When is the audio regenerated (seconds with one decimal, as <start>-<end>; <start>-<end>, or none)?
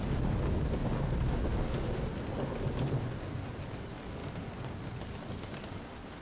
none